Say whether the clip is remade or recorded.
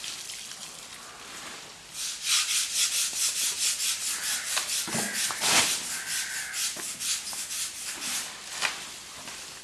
recorded